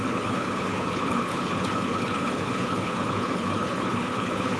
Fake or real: fake